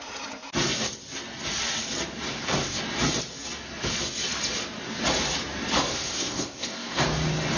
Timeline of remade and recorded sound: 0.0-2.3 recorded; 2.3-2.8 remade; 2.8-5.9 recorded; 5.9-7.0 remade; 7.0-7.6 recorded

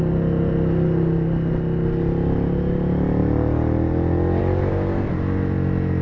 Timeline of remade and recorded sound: 0.0-6.0 recorded